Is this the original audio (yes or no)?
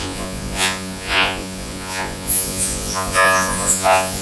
no